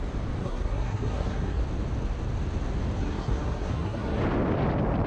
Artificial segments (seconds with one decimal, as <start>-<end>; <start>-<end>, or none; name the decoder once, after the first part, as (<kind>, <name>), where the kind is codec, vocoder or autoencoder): 0.4-1.6 (codec, SNAC); 3.0-4.2